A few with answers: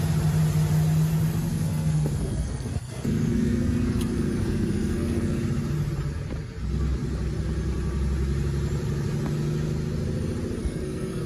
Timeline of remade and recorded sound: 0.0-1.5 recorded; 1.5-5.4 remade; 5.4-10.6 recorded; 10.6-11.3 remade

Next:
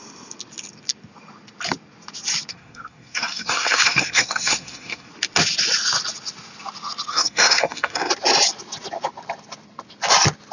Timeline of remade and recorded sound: 0.0-2.5 recorded; 2.5-5.1 remade; 5.1-7.1 recorded; 7.1-8.1 remade; 8.1-10.5 recorded

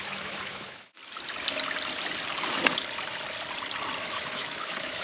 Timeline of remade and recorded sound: 0.0-1.0 remade; 1.0-4.0 recorded; 4.0-5.0 remade

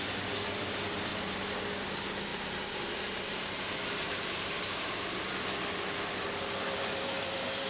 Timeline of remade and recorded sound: 0.0-1.1 recorded; 1.1-1.6 remade; 1.6-2.3 recorded; 2.3-5.2 remade; 5.2-7.7 recorded

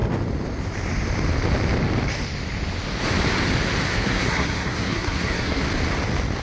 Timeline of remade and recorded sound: 0.0-3.9 recorded; 3.9-5.6 remade; 5.6-6.4 recorded

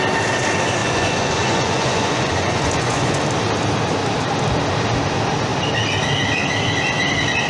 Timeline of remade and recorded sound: 0.0-0.8 recorded; 0.8-3.2 remade; 3.2-7.5 recorded